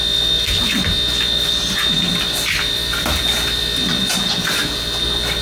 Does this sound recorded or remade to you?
recorded